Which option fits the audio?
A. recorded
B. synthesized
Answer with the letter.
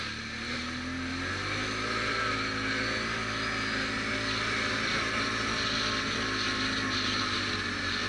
A